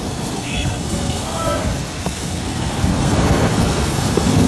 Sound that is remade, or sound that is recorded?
remade